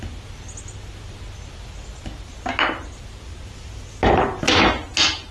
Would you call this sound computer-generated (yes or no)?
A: no